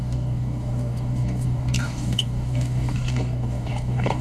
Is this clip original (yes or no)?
no